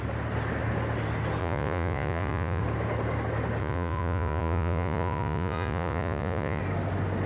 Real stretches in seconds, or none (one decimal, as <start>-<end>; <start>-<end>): 0.0-1.4; 2.6-3.6; 6.6-7.3